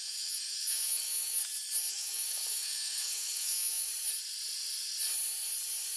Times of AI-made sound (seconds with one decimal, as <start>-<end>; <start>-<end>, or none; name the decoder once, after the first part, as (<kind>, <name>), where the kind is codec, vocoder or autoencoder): 0.0-1.4 (autoencoder, DAC-VAE); 1.9-3.9